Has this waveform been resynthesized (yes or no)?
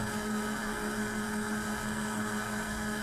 yes